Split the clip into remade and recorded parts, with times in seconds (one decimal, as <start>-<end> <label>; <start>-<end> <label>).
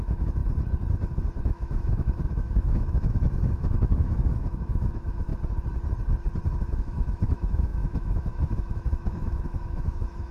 0.0-0.4 remade; 0.4-1.4 recorded; 1.4-5.3 remade; 5.3-6.5 recorded; 6.5-10.3 remade